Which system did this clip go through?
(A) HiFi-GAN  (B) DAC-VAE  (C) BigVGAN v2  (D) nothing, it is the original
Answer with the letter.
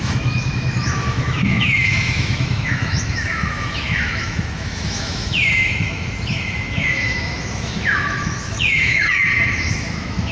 B